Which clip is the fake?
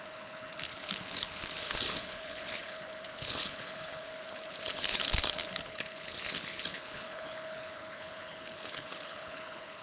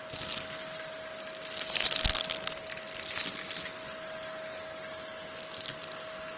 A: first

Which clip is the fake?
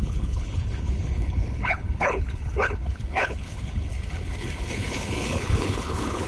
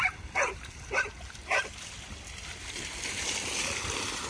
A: first